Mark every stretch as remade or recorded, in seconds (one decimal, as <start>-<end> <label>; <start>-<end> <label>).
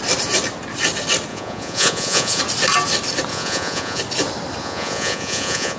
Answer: 0.0-1.3 recorded; 1.3-2.4 remade; 2.4-3.3 recorded; 3.3-4.0 remade; 4.0-4.6 recorded; 4.6-5.8 remade